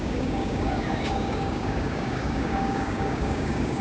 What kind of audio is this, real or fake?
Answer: fake